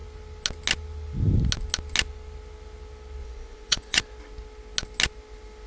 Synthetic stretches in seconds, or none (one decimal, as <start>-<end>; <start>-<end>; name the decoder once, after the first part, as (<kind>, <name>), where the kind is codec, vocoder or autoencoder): 3.2-4.0 (vocoder, Vocos)